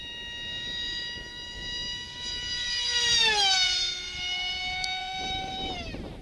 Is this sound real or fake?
fake